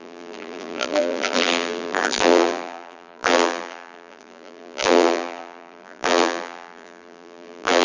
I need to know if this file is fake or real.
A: fake